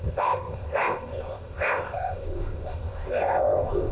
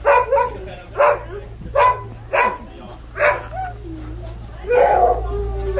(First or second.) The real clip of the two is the second